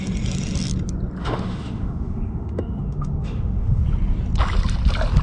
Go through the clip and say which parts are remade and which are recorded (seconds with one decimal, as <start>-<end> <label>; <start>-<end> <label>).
0.0-1.2 recorded; 1.2-3.8 remade; 3.8-5.2 recorded